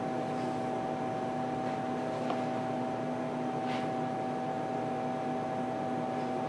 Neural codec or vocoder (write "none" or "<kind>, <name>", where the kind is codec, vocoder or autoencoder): none